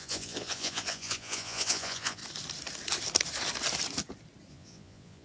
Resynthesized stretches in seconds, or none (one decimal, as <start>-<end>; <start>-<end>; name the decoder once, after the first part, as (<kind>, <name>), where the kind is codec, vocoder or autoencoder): 0.0-2.2 (vocoder, Vocos); 4.5-5.2